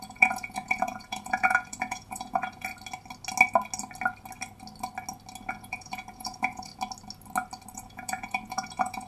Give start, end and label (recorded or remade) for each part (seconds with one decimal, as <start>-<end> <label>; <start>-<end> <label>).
0.0-2.7 remade; 2.7-5.5 recorded; 5.5-6.7 remade; 6.7-7.7 recorded; 7.7-9.1 remade

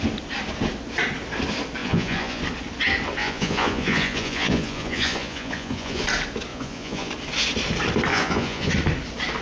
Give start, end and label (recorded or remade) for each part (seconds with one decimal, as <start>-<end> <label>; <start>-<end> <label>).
0.0-1.8 recorded; 1.8-2.4 remade; 2.4-3.2 recorded; 3.2-6.0 remade; 6.0-6.5 recorded; 6.5-7.1 remade; 7.1-8.1 recorded; 8.1-8.7 remade; 8.7-9.4 recorded

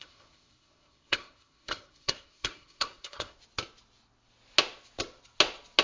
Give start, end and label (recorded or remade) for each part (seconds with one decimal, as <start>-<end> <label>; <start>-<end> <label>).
0.0-3.4 remade; 3.4-5.8 recorded